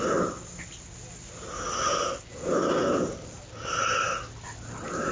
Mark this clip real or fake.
real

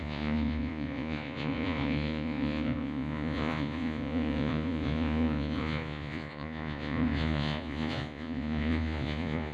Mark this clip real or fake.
fake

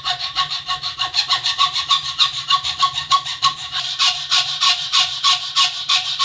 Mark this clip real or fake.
fake